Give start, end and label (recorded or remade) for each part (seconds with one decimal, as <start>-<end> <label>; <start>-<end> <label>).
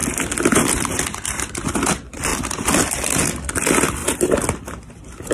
0.0-2.3 remade; 2.3-3.5 recorded; 3.5-4.0 remade; 4.0-5.3 recorded